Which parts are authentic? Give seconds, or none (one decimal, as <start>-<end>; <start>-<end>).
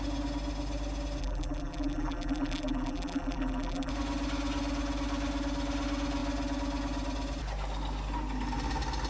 0.0-1.2; 3.9-9.1